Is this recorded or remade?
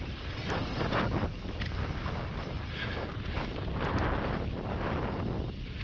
recorded